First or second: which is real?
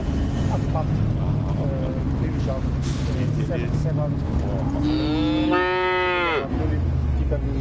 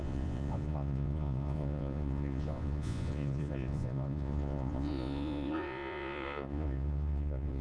first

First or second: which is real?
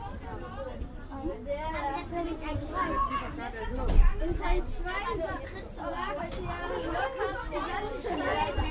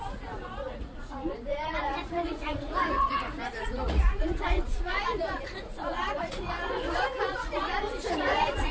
first